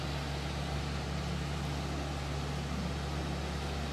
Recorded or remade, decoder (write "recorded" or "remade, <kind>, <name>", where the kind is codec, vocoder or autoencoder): recorded